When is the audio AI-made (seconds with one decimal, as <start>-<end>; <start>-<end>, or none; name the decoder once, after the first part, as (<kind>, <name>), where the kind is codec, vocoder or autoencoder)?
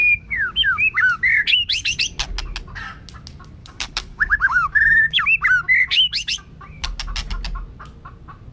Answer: 0.0-2.0 (codec, DAC); 3.6-5.2; 5.8-6.4